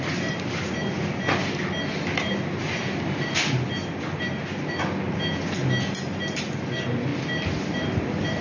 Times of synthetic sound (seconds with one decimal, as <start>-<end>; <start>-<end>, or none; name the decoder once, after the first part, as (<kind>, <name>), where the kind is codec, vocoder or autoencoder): none